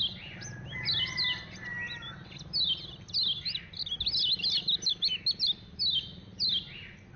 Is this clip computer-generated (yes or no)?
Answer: no